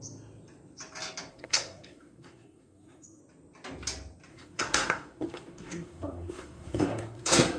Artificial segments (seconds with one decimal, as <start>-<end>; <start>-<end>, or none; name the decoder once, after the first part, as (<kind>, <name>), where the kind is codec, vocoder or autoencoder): 1.3-3.2 (codec, SNAC); 4.3-7.6